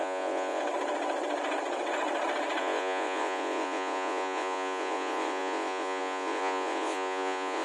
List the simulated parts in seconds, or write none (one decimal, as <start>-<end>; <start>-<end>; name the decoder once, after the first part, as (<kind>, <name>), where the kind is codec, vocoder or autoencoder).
0.0-0.6 (vocoder, Vocos); 2.6-7.6